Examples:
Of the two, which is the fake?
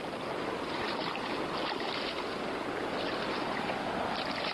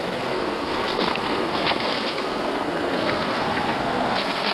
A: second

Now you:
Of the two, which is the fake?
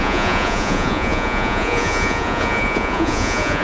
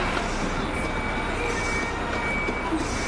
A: first